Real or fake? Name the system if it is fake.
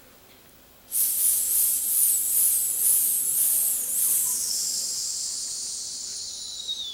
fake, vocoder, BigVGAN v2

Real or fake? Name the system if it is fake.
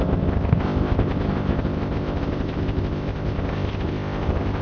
fake, codec, ZipCodec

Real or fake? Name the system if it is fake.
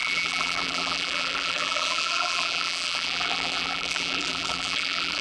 fake, vocoder, BigVGAN v2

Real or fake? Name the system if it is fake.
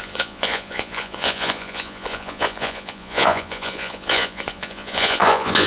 fake, vocoder, Vocos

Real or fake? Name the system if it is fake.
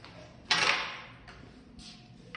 real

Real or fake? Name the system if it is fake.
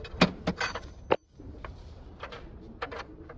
real